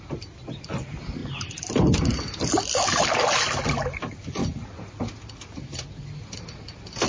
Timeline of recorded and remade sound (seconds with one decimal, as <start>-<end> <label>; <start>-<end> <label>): 0.0-7.1 recorded